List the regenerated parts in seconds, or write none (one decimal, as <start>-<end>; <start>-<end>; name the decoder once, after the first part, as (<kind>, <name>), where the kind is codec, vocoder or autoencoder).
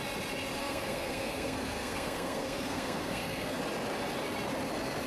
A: 0.6-3.6 (codec, SNAC)